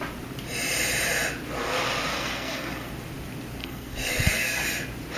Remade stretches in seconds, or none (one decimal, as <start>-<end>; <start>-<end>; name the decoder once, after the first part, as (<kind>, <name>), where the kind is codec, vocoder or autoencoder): 2.1-2.9 (codec, SNAC); 3.6-4.6